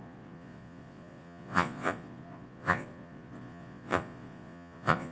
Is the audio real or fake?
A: fake